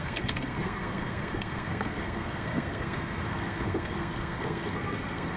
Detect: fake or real fake